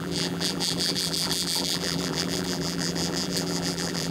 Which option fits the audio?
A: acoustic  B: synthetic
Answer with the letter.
B